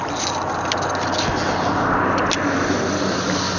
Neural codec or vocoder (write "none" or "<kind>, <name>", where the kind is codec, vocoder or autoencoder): none